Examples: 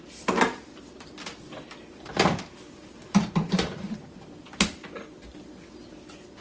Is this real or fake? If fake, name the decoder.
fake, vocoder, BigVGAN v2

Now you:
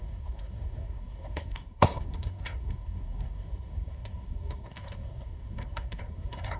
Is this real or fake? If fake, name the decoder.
fake, codec, SNAC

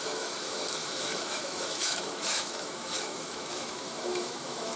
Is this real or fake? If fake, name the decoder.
fake, autoencoder, DAC-VAE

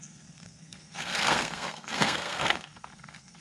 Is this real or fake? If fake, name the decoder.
fake, codec, SNAC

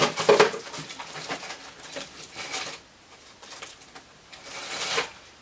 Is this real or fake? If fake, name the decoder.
real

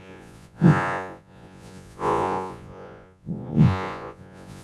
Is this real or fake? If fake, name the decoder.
fake, vocoder, Vocos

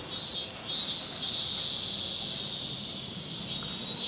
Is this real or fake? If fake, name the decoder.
real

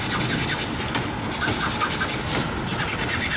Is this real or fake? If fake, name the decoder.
real